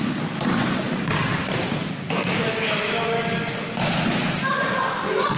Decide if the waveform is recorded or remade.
recorded